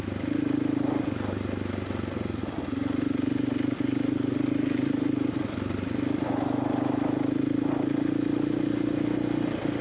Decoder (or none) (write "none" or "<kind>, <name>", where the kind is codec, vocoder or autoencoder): none